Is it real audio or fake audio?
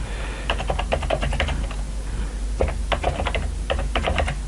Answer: real